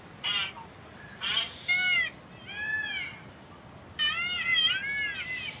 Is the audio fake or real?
real